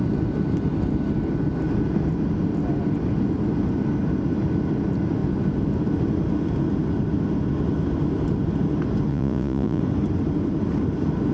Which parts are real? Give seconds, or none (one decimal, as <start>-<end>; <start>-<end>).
0.0-9.1; 9.8-11.3